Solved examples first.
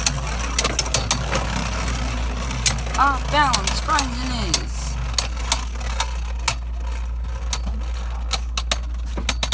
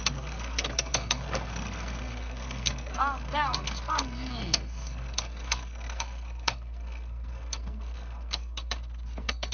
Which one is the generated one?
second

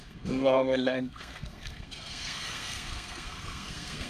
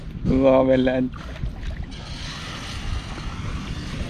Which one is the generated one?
first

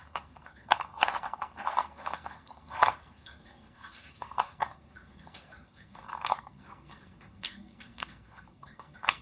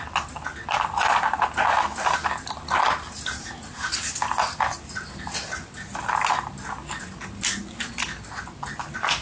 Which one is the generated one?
first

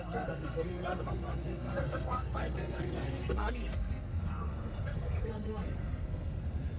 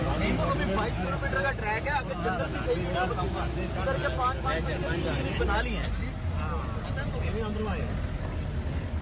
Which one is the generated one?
first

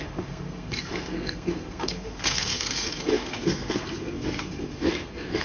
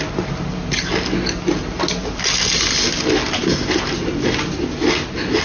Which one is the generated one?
first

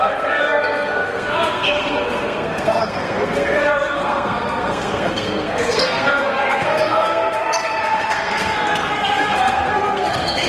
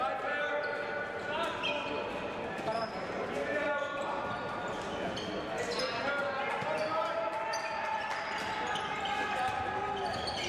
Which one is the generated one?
first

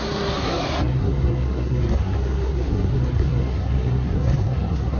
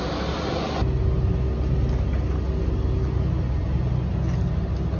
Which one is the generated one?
first